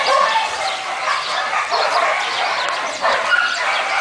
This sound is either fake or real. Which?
fake